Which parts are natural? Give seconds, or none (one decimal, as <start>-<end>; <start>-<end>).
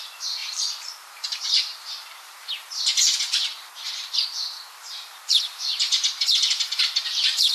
none